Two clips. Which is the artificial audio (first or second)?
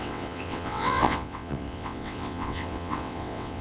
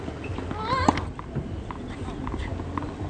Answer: first